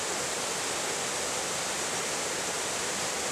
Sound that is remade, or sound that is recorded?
recorded